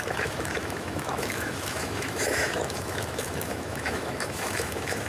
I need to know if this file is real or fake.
fake